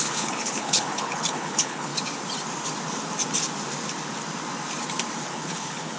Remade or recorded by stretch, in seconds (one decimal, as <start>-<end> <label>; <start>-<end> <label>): 0.0-1.9 remade; 1.9-5.3 recorded; 5.3-6.0 remade